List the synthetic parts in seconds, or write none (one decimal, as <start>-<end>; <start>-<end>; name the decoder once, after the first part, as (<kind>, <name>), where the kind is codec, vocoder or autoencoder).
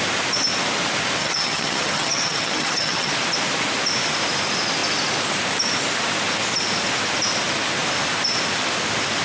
1.2-3.1 (vocoder, HiFi-GAN)